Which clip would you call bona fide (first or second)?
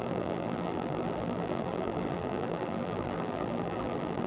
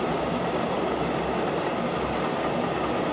second